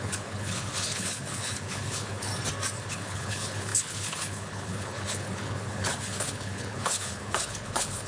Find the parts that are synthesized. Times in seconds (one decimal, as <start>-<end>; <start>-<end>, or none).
0.0-2.3; 2.9-8.1